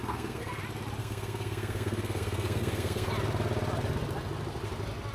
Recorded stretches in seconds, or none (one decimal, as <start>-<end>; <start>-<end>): 0.6-1.0; 3.1-5.1